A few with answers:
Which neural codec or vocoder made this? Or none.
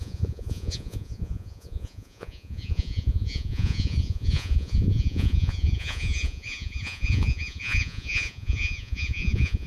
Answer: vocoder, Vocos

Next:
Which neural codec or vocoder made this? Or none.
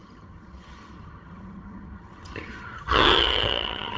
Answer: vocoder, HiFi-GAN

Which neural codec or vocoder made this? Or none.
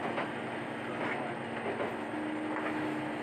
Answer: none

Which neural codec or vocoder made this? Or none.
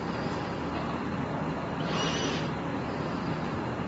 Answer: none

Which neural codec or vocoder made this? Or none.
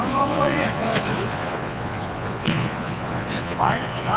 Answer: vocoder, Vocos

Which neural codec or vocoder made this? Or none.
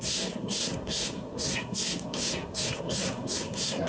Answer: codec, SNAC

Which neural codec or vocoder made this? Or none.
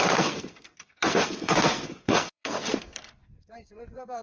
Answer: codec, SNAC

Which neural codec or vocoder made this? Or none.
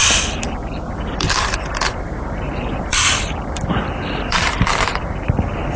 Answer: vocoder, BigVGAN v2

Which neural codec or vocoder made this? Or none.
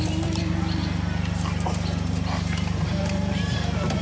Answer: none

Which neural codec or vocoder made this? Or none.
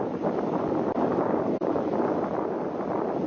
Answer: none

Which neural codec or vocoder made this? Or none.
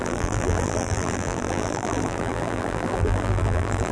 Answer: vocoder, BigVGAN v2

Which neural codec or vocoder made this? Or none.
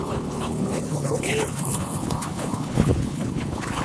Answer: codec, HILCodec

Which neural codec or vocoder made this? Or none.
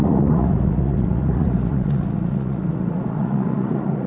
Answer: vocoder, Vocos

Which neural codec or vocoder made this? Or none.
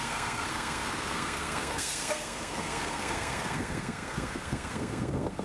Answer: codec, SNAC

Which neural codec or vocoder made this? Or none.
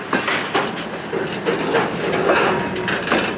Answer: none